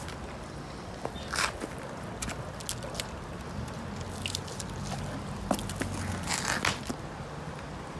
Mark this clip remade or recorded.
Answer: recorded